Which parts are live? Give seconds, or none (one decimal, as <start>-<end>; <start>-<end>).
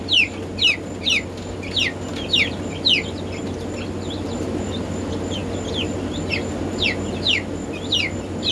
0.0-8.5